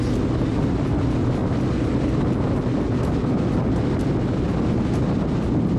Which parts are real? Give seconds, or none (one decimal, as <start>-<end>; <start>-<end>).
0.0-5.8